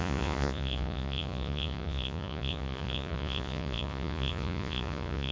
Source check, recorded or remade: remade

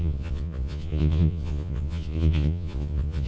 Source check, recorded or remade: remade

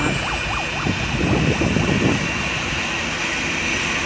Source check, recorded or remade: recorded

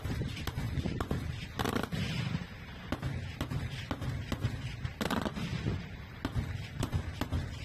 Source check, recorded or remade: recorded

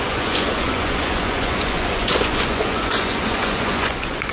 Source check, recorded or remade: remade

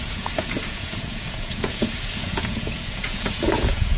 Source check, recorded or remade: remade